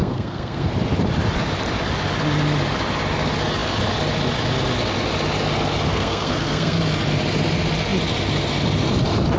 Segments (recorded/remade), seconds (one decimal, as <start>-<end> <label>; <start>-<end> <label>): 0.0-0.7 remade; 0.7-5.9 recorded; 5.9-6.8 remade; 6.8-9.4 recorded